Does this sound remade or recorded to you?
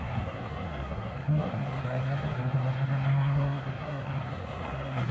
remade